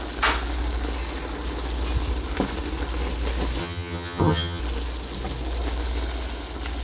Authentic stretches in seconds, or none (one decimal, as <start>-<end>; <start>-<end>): 0.0-3.6; 4.6-6.8